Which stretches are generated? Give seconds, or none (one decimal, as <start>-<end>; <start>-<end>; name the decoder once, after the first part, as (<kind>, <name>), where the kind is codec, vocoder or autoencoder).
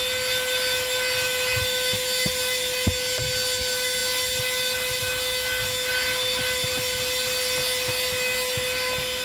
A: none